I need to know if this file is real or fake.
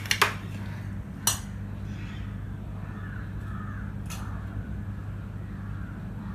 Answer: real